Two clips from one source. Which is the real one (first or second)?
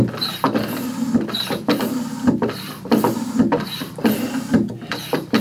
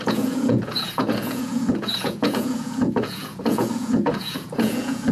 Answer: first